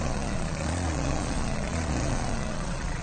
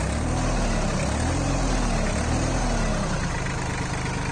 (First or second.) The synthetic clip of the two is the first